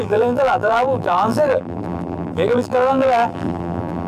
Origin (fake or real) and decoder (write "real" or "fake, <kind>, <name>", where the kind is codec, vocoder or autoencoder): fake, vocoder, BigVGAN v2